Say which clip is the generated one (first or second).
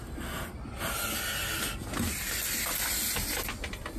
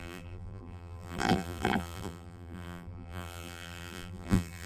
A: second